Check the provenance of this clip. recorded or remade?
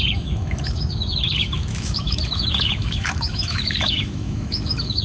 remade